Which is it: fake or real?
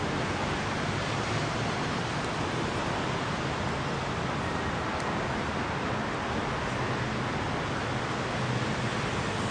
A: real